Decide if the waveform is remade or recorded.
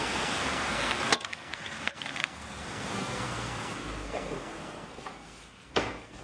remade